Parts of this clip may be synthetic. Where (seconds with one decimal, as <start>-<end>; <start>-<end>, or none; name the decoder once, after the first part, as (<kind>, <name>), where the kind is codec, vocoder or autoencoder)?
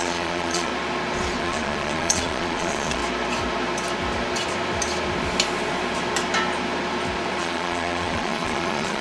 0.0-0.7 (vocoder, Vocos); 1.4-3.0; 7.4-9.0